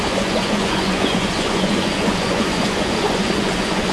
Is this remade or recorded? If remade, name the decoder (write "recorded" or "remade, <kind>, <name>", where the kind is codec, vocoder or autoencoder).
remade, vocoder, Vocos